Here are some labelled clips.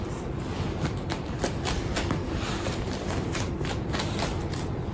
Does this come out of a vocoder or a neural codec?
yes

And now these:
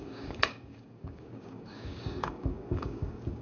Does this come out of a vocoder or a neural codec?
yes